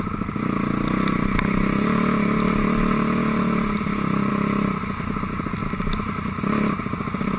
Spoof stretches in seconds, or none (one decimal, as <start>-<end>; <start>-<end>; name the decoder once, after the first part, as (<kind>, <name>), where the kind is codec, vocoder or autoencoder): none